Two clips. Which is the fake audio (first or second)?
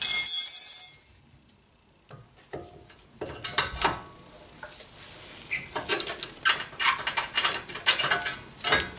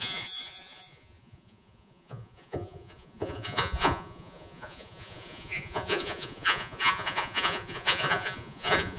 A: second